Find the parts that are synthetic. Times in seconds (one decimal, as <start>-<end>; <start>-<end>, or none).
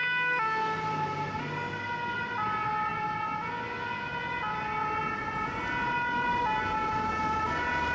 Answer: none